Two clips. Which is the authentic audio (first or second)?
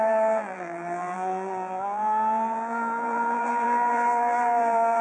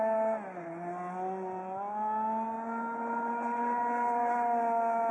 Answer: second